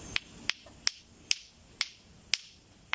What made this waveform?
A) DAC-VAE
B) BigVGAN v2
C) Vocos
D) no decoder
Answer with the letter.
D